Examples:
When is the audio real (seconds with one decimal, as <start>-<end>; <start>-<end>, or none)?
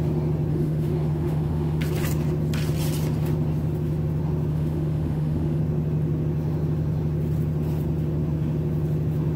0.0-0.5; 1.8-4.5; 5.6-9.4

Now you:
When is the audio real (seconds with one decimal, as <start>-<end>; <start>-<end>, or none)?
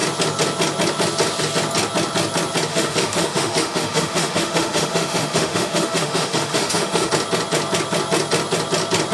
0.0-2.7; 7.1-9.1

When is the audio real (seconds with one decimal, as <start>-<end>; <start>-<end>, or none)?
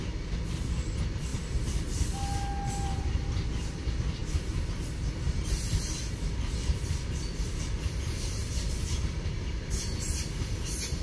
0.0-11.0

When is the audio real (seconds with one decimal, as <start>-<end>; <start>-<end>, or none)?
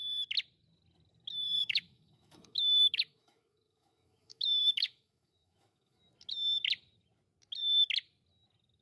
0.0-1.6; 6.0-8.8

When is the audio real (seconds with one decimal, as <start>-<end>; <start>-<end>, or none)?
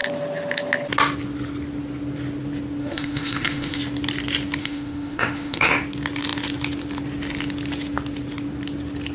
0.0-2.8; 3.8-4.6; 5.7-9.1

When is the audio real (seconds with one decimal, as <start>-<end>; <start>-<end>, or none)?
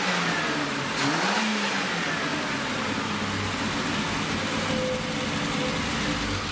0.0-6.5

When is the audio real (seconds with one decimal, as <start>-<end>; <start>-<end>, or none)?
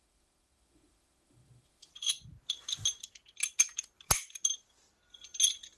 1.9-5.8